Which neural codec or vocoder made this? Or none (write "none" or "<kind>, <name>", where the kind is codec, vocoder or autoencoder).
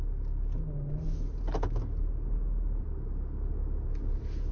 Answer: none